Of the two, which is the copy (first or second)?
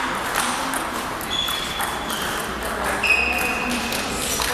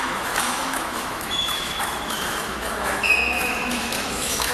second